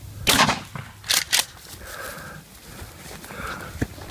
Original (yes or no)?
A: yes